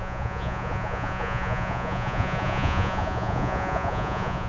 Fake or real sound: fake